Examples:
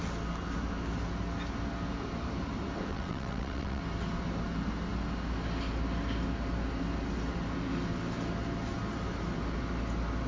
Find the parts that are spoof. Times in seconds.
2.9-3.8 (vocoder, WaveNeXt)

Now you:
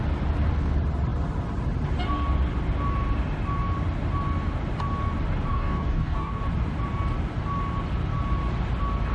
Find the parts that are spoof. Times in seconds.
5.5-6.4 (codec, DAC)